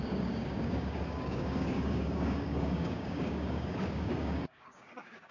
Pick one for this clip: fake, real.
fake